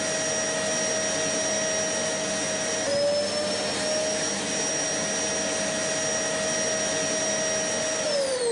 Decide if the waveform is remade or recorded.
recorded